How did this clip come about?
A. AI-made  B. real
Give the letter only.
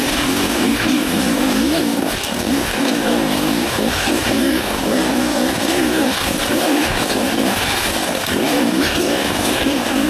A